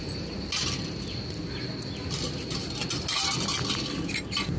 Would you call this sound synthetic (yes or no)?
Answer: no